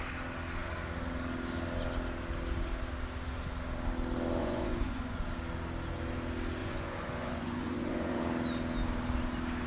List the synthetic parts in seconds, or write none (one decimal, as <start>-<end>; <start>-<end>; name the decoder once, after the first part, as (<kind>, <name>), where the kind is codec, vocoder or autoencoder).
4.4-5.2 (vocoder, Vocos); 6.6-8.2